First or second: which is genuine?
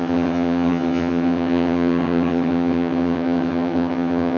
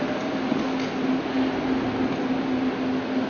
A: second